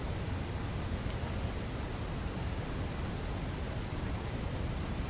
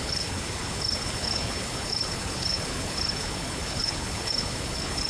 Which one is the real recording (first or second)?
first